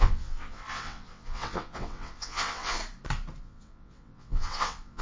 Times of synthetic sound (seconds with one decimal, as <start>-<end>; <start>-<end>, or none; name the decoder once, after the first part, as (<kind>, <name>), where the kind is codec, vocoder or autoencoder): 0.0-2.8 (vocoder, WaveNeXt); 3.4-5.0